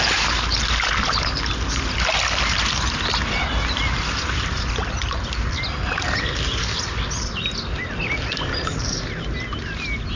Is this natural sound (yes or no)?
yes